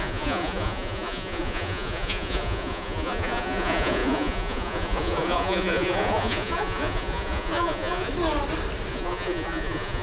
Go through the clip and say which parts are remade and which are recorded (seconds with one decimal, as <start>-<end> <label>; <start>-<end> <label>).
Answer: 0.0-8.1 remade; 8.1-8.9 recorded; 8.9-10.0 remade